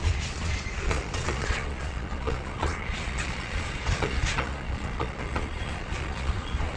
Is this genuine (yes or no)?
no